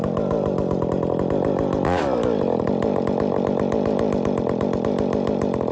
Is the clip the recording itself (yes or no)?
yes